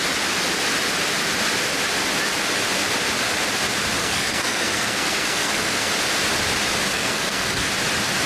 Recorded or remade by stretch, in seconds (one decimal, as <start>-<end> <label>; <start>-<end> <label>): 0.0-4.0 recorded; 4.0-5.9 remade; 5.9-6.9 recorded; 6.9-7.7 remade; 7.7-8.3 recorded

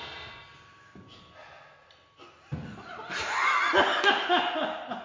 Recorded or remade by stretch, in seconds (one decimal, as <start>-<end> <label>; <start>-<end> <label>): 0.0-5.0 recorded

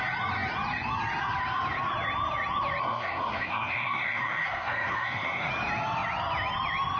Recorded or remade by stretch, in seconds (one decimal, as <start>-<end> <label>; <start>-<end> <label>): 0.0-2.8 recorded; 2.8-5.5 remade; 5.5-7.0 recorded

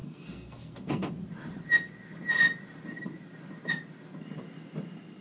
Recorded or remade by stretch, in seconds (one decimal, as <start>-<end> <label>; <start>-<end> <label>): 0.0-1.1 remade; 1.1-5.2 recorded

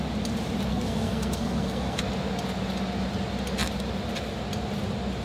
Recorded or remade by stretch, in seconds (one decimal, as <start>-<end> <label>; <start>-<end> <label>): 0.0-0.7 recorded; 0.7-2.0 remade; 2.0-5.2 recorded

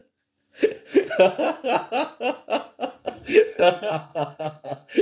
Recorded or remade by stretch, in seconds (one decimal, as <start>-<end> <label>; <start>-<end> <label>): 0.0-3.0 recorded; 3.0-5.0 remade

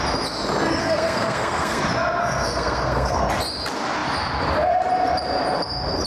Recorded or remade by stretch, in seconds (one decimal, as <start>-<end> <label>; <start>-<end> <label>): 0.0-0.8 recorded; 0.8-1.8 remade; 1.8-2.2 recorded; 2.2-3.2 remade; 3.2-6.1 recorded